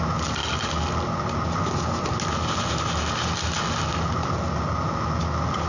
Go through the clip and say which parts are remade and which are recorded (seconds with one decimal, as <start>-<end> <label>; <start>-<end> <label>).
0.0-5.7 recorded